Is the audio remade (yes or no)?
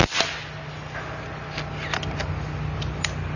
no